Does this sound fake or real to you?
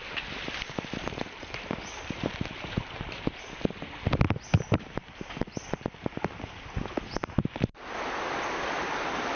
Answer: real